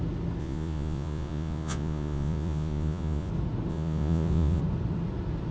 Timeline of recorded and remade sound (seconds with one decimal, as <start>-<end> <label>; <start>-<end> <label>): 0.0-0.4 recorded; 0.4-3.3 remade; 3.3-3.7 recorded; 3.7-4.6 remade; 4.6-5.5 recorded